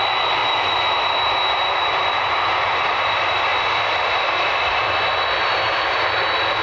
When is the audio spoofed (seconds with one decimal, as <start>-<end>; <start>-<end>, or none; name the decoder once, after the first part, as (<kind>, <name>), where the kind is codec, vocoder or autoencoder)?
0.4-2.3 (vocoder, BigVGAN v2)